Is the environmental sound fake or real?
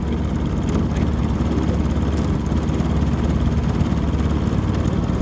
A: real